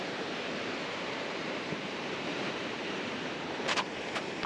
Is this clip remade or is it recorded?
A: remade